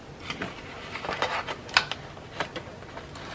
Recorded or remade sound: recorded